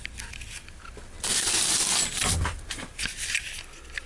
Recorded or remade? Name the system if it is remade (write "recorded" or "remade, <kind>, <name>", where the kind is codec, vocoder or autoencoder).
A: recorded